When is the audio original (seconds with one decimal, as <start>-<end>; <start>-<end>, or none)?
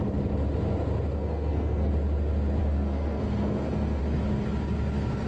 0.0-1.1; 1.9-2.6; 4.0-5.3